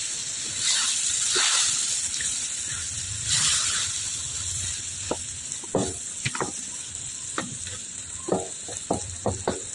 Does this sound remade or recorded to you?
recorded